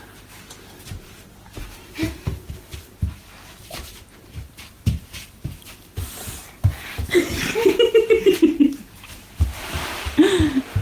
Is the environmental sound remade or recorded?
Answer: remade